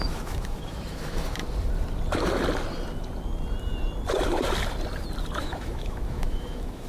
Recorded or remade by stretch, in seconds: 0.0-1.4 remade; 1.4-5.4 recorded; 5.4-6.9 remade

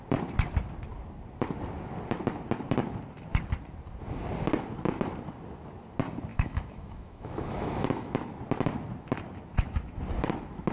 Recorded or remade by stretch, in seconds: 0.0-6.3 recorded; 6.3-8.1 remade; 8.1-10.7 recorded

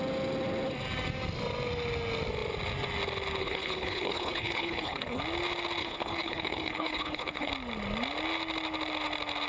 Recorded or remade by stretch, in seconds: 0.0-3.4 recorded; 3.4-5.2 remade; 5.2-5.8 recorded; 5.8-7.5 remade; 7.5-9.5 recorded

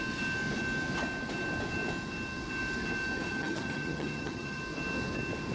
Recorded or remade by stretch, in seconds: 0.0-3.3 recorded; 3.3-4.6 remade; 4.6-5.5 recorded

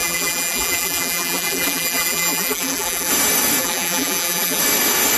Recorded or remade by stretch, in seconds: 0.0-3.1 remade; 3.1-3.6 recorded; 3.6-4.6 remade; 4.6-5.2 recorded

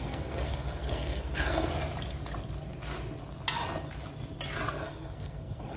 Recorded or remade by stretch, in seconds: 0.0-1.7 remade; 1.7-4.7 recorded; 4.7-5.8 remade

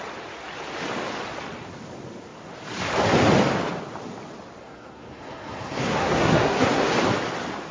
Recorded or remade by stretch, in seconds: 0.0-4.6 recorded; 4.6-6.9 remade; 6.9-7.7 recorded

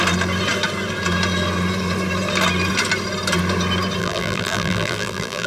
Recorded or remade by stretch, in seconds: 0.0-4.0 recorded; 4.0-5.5 remade